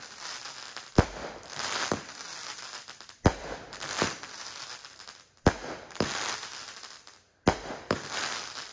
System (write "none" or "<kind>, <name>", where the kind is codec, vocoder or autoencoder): none